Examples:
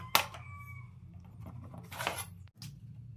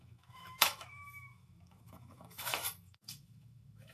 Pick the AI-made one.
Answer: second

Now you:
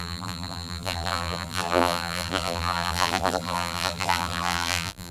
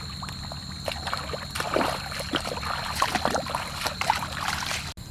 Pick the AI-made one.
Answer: first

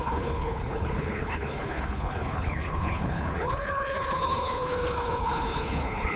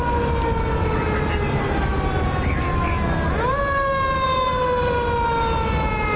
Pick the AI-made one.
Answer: first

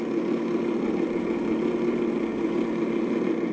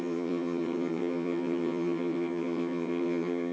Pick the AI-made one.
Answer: second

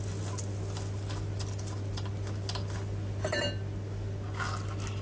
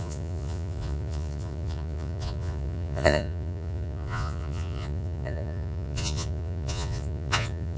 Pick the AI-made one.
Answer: second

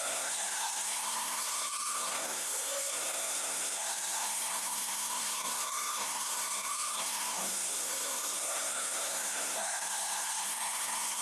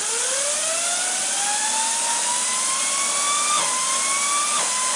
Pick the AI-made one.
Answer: first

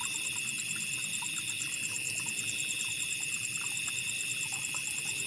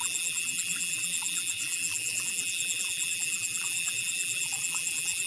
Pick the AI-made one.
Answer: second